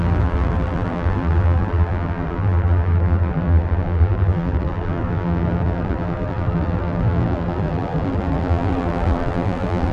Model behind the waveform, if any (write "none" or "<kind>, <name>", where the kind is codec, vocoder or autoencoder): vocoder, BigVGAN v2